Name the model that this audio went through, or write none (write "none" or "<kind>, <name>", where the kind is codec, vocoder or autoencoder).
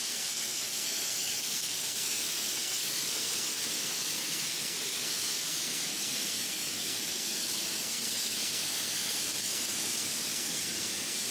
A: codec, SNAC